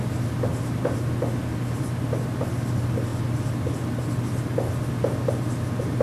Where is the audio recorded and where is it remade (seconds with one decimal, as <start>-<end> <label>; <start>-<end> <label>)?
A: 0.0-0.5 recorded; 0.5-2.5 remade; 2.5-6.0 recorded